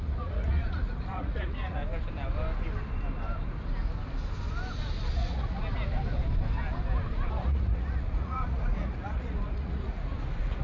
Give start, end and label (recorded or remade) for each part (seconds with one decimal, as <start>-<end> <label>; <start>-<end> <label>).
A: 0.0-1.8 remade; 1.8-5.1 recorded; 5.1-5.6 remade; 5.6-7.3 recorded; 7.3-10.1 remade; 10.1-10.6 recorded